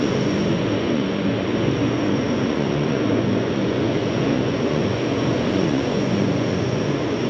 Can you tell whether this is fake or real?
fake